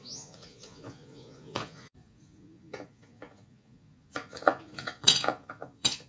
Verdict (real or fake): fake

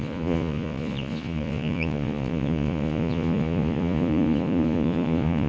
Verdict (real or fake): fake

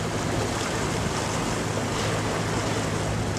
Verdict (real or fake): real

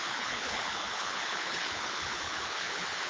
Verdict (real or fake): fake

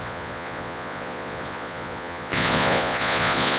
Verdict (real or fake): fake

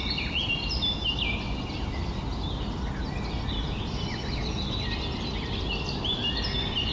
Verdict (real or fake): real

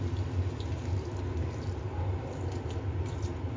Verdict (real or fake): real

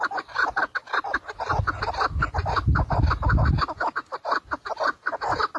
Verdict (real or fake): real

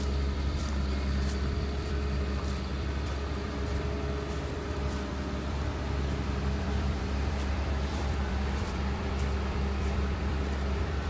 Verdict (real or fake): fake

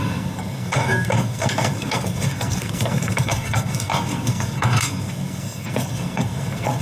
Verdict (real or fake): fake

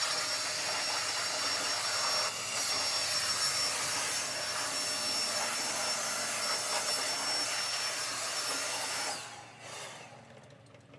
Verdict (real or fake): real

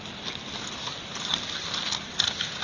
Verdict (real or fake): real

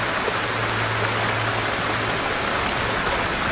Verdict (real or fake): real